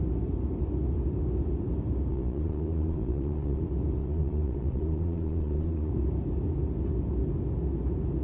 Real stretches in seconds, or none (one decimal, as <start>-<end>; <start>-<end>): 0.0-2.1; 3.6-4.0; 5.9-8.2